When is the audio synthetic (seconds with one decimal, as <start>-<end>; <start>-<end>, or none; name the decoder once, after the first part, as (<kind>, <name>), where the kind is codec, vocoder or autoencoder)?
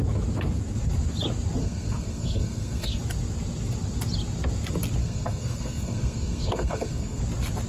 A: 1.6-3.0 (codec, SNAC); 5.0-7.2